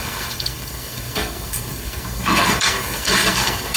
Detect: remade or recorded remade